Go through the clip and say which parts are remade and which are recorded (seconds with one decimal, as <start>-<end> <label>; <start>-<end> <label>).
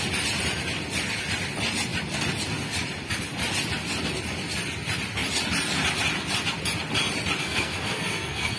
0.0-7.4 recorded; 7.4-8.6 remade